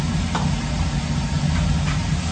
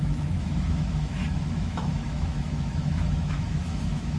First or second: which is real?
first